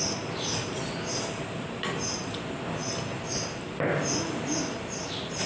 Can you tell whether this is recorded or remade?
recorded